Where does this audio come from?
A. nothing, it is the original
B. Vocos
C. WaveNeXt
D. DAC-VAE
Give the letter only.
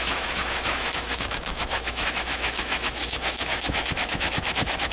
D